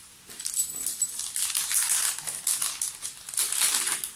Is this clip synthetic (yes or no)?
no